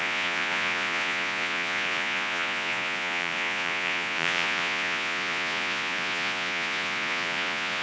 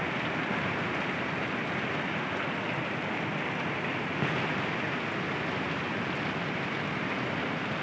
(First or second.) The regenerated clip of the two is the first